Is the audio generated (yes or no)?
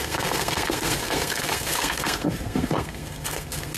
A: yes